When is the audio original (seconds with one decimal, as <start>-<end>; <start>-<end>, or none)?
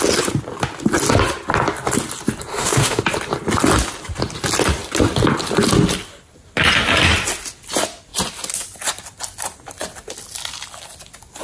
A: 0.0-2.5; 3.0-11.4